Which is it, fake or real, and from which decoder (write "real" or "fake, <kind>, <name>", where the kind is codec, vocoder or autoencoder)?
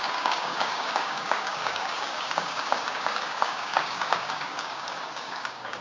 fake, codec, DAC